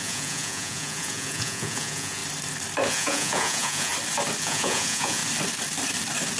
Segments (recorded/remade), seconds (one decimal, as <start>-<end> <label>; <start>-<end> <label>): 0.0-2.2 remade; 2.2-2.9 recorded; 2.9-3.9 remade; 3.9-4.4 recorded; 4.4-5.2 remade; 5.2-6.4 recorded